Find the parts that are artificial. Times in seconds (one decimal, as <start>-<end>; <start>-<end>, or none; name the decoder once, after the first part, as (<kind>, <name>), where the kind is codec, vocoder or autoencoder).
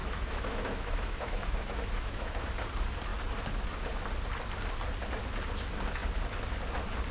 0.0-2.5 (autoencoder, DAC-VAE)